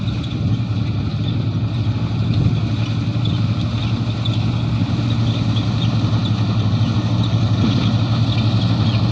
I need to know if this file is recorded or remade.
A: recorded